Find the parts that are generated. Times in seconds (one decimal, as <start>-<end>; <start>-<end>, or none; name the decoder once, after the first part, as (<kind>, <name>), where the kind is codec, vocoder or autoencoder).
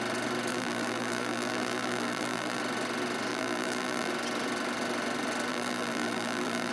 0.5-2.6 (vocoder, BigVGAN v2); 3.3-4.1; 5.5-6.7